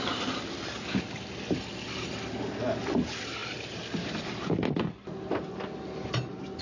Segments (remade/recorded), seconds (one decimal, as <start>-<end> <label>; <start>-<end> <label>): 0.0-6.6 recorded